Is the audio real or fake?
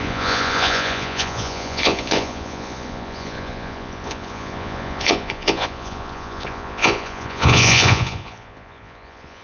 fake